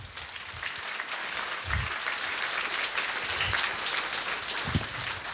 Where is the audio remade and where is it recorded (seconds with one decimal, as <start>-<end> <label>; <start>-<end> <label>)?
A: 0.0-1.2 recorded; 1.2-1.7 remade; 1.7-5.3 recorded